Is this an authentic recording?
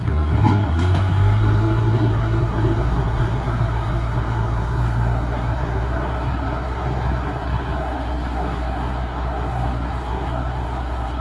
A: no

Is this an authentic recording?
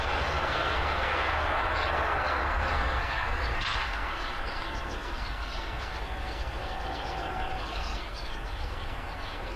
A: no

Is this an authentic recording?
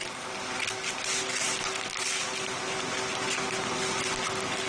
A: yes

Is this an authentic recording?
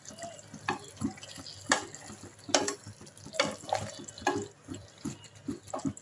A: yes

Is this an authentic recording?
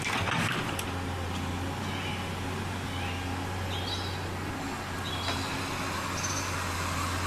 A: yes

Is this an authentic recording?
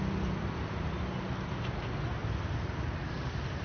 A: yes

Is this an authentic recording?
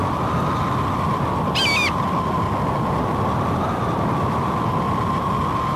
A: yes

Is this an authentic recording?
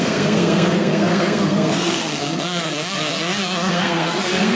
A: no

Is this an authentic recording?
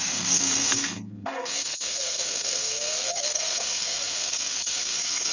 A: no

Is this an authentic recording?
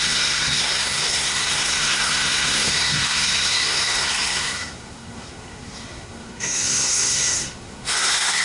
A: no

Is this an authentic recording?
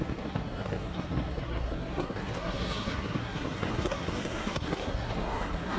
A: no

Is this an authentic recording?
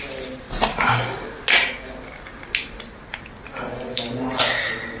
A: yes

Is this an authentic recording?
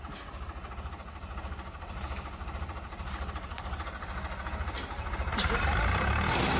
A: yes